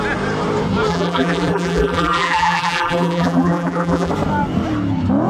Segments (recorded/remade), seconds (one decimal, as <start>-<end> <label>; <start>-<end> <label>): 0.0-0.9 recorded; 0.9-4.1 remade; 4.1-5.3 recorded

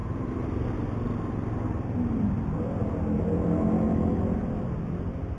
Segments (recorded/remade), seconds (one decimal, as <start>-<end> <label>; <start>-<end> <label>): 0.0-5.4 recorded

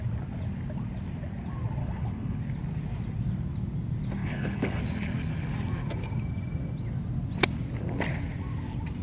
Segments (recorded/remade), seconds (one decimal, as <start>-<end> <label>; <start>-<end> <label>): 0.0-1.8 recorded; 1.8-2.4 remade; 2.4-4.2 recorded; 4.2-4.8 remade; 4.8-9.0 recorded